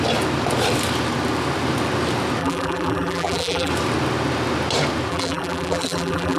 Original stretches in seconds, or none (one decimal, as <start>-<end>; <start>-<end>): 0.0-2.4; 3.7-5.1